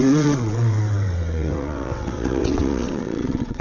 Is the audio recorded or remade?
remade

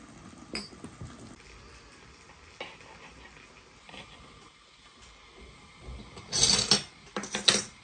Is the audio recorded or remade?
recorded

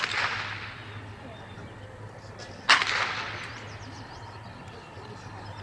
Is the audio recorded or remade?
recorded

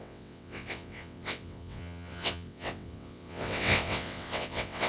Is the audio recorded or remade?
remade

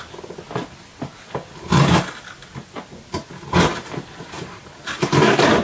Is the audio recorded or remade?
recorded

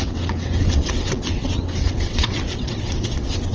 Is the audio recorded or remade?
remade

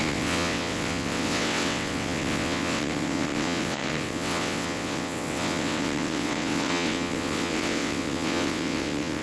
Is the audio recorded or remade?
remade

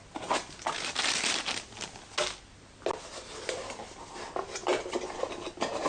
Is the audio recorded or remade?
recorded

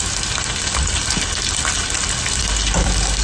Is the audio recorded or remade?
recorded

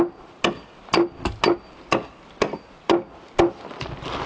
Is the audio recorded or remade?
recorded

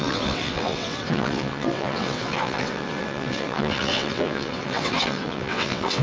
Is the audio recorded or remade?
remade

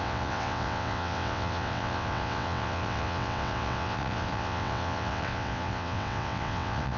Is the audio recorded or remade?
remade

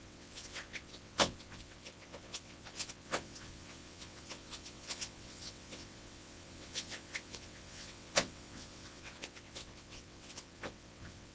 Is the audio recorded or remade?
remade